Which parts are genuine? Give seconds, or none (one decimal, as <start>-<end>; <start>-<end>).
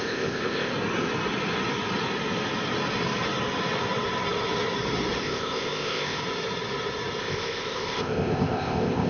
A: 0.7-5.2; 6.2-7.2